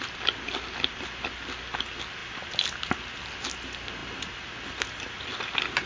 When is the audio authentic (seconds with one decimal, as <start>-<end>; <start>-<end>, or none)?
0.0-5.9